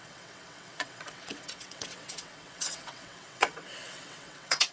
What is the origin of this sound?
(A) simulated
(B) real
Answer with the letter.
A